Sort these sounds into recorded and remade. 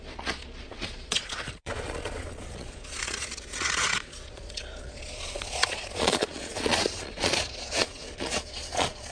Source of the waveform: remade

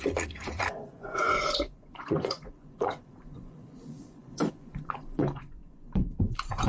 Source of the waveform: remade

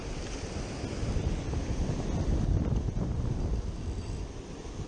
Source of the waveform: recorded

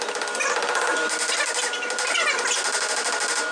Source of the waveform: recorded